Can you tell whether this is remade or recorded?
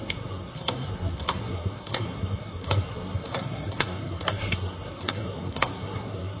remade